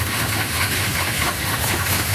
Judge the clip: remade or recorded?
remade